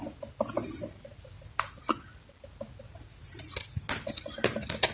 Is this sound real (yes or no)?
yes